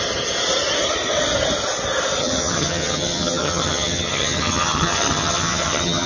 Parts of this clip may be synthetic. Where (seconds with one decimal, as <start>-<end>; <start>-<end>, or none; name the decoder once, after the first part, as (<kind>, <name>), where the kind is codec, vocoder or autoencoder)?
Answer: 2.2-6.1 (vocoder, HiFi-GAN)